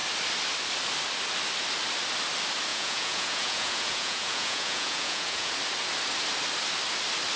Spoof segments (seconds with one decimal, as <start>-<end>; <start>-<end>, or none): 2.7-5.5